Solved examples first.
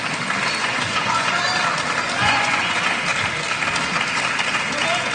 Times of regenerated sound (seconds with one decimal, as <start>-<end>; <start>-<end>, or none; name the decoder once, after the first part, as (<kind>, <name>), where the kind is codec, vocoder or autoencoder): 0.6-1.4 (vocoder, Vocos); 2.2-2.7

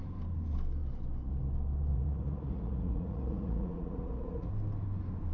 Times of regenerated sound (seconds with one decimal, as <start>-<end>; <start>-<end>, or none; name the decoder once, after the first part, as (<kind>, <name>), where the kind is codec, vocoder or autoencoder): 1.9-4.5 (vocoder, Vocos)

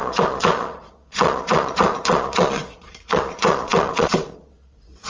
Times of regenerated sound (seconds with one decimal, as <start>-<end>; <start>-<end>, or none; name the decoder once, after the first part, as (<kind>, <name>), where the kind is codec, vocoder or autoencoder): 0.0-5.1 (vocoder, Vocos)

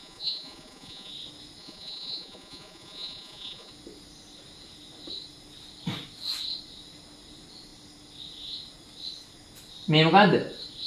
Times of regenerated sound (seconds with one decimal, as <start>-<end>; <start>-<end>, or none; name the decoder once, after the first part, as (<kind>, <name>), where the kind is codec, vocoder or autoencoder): 0.0-1.1 (vocoder, Vocos); 1.6-3.7

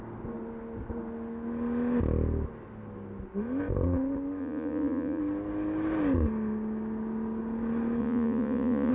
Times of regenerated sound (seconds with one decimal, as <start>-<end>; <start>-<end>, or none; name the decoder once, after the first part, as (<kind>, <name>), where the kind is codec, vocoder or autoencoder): 4.4-5.2 (vocoder, Vocos); 8.0-8.9

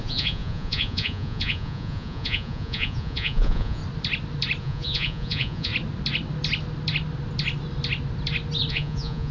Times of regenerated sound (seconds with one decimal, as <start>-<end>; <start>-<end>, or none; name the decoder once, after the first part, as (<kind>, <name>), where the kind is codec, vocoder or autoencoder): 0.0-3.8 (vocoder, Vocos); 4.6-5.7; 8.7-9.3